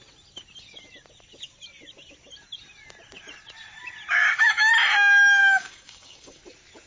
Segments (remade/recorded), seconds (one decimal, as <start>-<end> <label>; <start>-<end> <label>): 0.0-4.2 recorded; 4.2-4.7 remade; 4.7-5.4 recorded; 5.4-6.4 remade; 6.4-6.9 recorded